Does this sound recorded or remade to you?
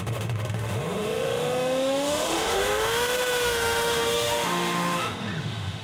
remade